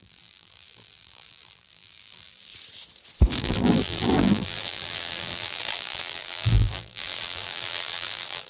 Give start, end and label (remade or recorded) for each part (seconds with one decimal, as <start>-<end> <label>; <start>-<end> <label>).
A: 0.0-2.5 remade; 2.5-3.4 recorded; 3.4-8.5 remade